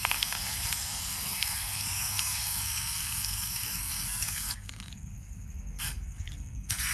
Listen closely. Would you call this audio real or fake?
fake